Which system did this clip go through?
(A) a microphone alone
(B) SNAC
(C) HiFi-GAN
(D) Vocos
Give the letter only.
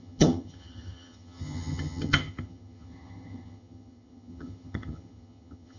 C